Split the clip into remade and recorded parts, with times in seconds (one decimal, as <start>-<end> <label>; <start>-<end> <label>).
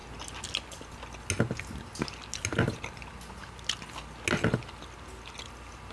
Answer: 0.0-5.9 recorded